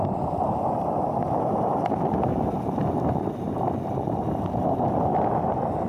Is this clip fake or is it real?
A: real